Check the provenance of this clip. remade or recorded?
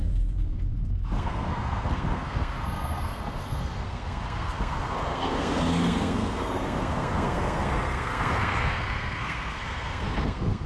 remade